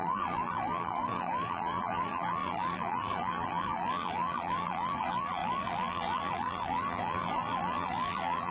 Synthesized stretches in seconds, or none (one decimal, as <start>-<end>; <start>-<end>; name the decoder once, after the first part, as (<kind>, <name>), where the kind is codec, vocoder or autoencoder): 0.0-8.5 (vocoder, BigVGAN v2)